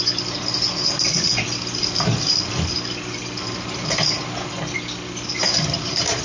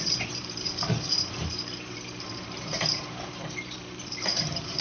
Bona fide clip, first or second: first